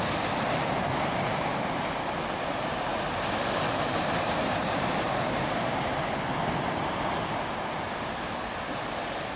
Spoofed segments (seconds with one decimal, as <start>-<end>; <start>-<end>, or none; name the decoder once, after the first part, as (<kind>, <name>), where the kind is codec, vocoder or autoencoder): 2.9-6.2 (vocoder, BigVGAN v2)